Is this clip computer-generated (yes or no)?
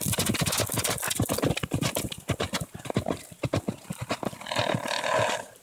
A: no